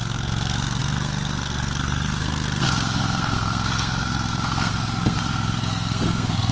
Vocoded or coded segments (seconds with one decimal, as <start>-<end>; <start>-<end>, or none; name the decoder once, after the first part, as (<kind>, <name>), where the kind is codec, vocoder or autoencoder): 0.0-6.5 (codec, SNAC)